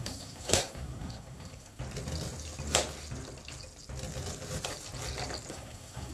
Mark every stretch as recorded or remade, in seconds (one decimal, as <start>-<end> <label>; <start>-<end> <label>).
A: 0.0-1.8 remade; 1.8-5.5 recorded; 5.5-6.1 remade